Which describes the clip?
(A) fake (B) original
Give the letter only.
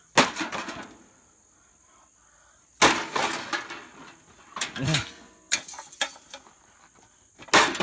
B